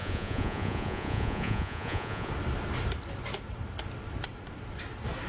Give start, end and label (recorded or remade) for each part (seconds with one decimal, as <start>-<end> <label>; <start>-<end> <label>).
0.0-2.3 remade; 2.3-5.3 recorded